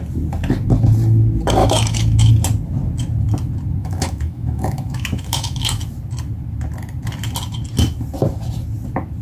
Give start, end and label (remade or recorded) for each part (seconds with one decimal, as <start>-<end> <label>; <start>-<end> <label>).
0.0-1.6 recorded; 1.6-2.3 remade; 2.3-3.8 recorded; 3.8-5.8 remade; 5.8-9.2 recorded